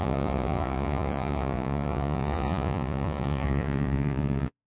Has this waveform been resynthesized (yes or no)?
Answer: yes